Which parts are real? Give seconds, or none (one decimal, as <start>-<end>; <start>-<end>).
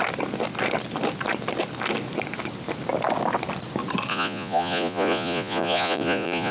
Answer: 0.0-4.1